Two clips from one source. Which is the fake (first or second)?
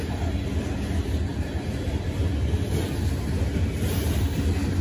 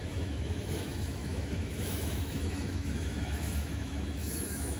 second